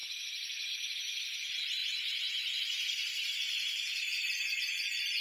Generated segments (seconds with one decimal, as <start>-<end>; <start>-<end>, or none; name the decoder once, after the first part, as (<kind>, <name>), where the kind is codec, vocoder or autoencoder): 0.0-0.7 (vocoder, BigVGAN v2); 1.8-4.5